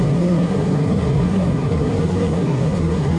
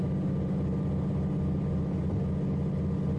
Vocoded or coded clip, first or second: first